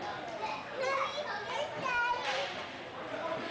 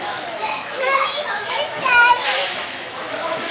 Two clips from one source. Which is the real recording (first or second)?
first